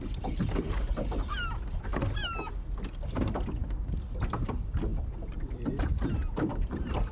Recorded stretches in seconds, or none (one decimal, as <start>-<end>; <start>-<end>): 0.0-3.6; 4.4-4.9